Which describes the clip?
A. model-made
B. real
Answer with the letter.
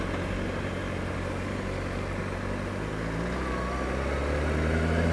B